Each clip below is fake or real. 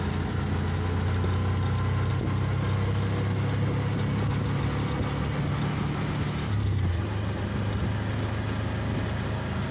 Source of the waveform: real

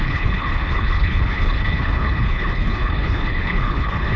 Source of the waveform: fake